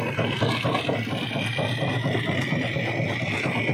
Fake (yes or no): no